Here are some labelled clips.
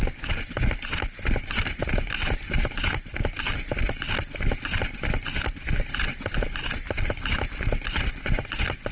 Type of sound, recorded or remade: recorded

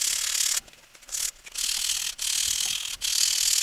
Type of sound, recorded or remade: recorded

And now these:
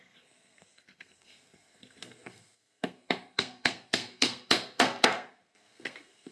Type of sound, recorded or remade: remade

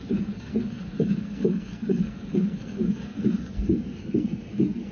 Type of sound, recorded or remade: remade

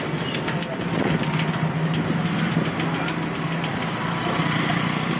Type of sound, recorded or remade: recorded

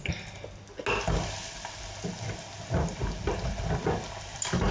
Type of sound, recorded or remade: recorded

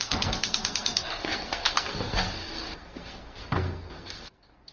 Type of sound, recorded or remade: remade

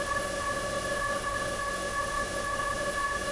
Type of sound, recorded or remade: remade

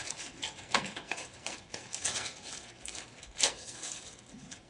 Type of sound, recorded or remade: remade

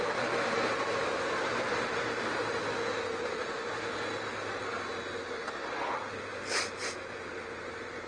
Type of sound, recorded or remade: recorded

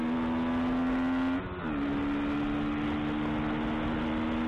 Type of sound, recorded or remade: recorded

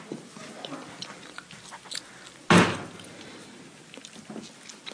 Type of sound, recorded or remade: recorded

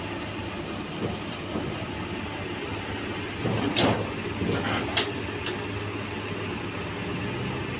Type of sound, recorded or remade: recorded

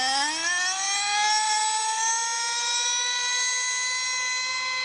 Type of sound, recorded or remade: recorded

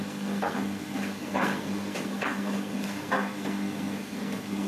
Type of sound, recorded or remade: remade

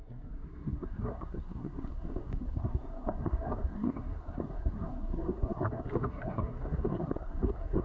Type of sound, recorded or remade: remade